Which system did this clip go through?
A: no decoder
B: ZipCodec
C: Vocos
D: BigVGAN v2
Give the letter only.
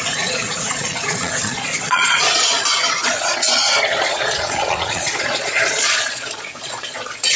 C